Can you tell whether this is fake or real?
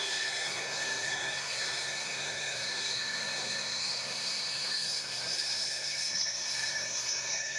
fake